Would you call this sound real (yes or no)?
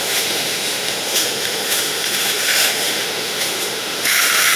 no